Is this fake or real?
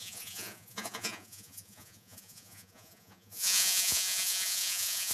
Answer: fake